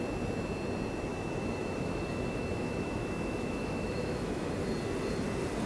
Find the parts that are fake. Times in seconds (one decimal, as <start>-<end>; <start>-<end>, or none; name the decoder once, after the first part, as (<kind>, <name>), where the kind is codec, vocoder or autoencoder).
1.1-4.5 (autoencoder, DAC-VAE)